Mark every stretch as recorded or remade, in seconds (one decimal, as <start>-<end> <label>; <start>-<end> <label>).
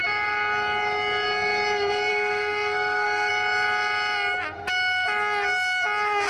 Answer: 0.0-2.1 recorded; 2.1-3.3 remade; 3.3-6.3 recorded